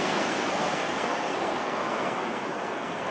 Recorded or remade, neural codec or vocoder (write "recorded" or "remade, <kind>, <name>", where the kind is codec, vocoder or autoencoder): remade, codec, SNAC